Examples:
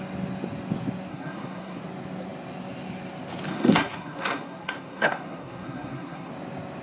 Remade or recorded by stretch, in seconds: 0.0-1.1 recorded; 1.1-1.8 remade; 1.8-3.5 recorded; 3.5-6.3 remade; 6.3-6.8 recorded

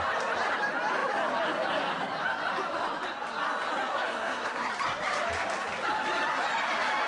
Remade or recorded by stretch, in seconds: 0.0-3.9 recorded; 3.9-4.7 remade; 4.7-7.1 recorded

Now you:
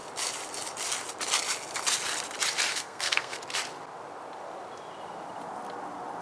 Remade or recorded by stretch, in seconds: 0.0-2.7 recorded; 2.7-3.4 remade; 3.4-6.2 recorded